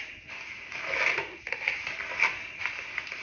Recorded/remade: recorded